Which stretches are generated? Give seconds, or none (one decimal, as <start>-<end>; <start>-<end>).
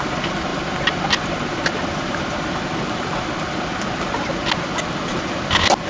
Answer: none